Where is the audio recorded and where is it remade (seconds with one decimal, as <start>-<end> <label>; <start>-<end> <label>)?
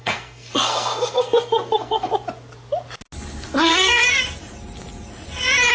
0.0-2.1 remade; 2.1-3.7 recorded; 3.7-4.2 remade; 4.2-5.7 recorded